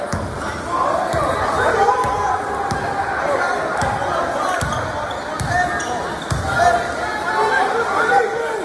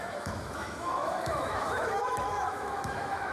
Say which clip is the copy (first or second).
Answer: second